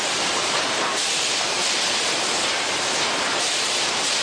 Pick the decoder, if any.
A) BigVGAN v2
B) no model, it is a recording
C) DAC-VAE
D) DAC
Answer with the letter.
A